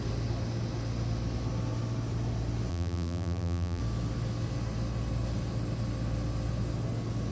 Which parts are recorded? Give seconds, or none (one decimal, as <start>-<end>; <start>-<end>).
0.0-2.7; 3.8-7.3